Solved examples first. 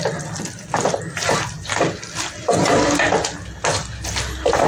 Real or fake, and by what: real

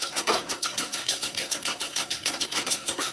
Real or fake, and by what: fake, codec, SNAC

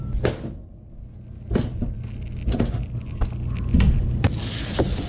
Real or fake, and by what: real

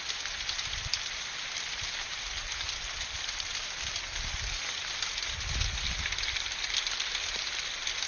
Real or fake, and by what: real